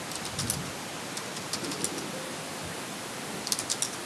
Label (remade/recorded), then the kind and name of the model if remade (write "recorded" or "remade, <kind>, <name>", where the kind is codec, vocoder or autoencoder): recorded